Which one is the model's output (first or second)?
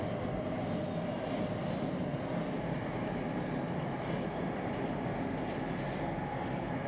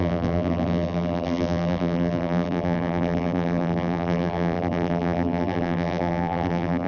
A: second